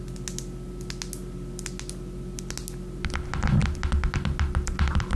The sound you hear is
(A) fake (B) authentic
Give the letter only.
B